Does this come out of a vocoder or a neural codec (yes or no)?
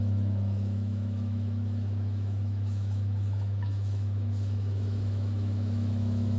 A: yes